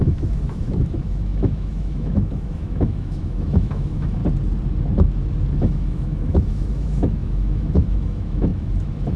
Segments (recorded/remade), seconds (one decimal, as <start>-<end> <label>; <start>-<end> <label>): 0.0-4.2 remade; 4.2-5.6 recorded; 5.6-9.2 remade